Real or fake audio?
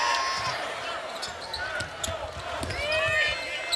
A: real